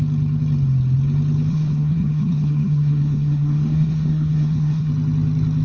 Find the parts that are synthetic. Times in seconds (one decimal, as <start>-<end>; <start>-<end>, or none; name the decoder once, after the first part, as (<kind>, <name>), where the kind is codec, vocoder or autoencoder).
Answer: 1.5-4.9 (codec, SNAC)